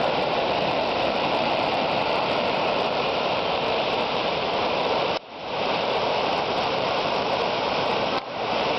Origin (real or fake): fake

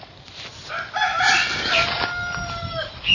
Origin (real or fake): real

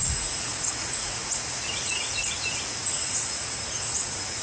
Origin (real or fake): fake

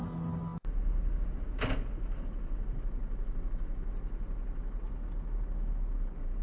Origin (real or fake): real